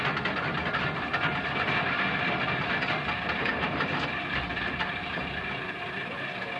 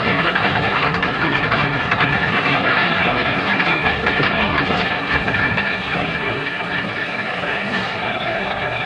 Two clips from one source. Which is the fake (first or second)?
second